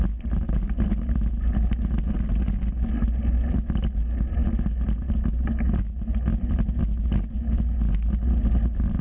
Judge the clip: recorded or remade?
recorded